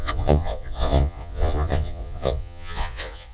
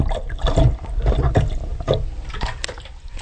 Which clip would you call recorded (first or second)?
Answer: second